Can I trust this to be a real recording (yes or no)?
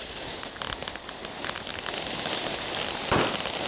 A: yes